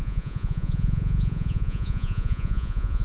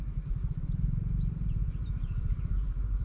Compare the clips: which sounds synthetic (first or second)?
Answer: first